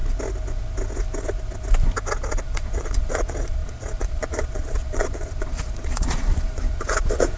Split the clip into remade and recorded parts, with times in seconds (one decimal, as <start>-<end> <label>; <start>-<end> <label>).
0.0-2.3 recorded; 2.3-7.4 remade

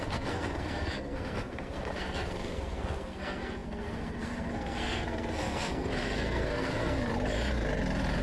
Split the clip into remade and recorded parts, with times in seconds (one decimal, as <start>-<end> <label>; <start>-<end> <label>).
0.0-7.1 remade; 7.1-8.2 recorded

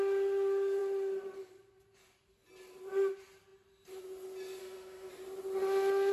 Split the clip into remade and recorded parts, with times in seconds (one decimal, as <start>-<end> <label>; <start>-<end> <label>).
0.0-4.6 recorded; 4.6-5.1 remade; 5.1-6.1 recorded

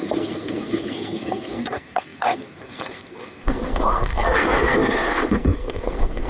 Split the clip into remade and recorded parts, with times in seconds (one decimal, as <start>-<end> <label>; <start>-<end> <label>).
0.0-6.3 remade